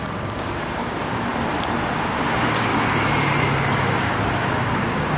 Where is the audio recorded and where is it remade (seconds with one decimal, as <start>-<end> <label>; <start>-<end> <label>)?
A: 0.0-1.3 remade; 1.3-2.1 recorded; 2.1-2.7 remade; 2.7-3.8 recorded; 3.8-5.2 remade